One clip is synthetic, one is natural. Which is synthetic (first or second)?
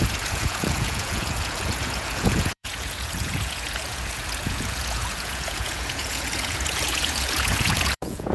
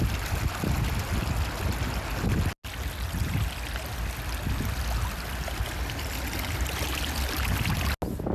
first